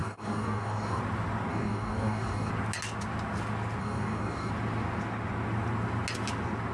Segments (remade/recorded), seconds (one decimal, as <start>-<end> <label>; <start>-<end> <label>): 0.0-1.0 remade; 1.0-1.5 recorded; 1.5-2.5 remade; 2.5-3.8 recorded; 3.8-4.5 remade; 4.5-6.7 recorded